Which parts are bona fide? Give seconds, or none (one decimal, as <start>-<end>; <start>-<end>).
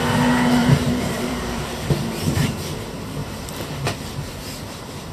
0.0-0.6; 2.8-3.2; 4.4-5.1